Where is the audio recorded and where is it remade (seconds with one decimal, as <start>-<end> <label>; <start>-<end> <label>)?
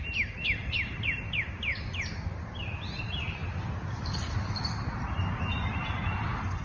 0.0-6.6 recorded